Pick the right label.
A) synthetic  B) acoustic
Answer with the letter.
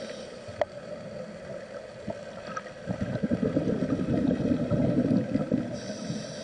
B